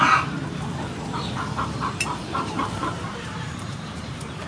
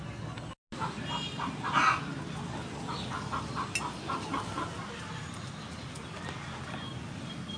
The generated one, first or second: first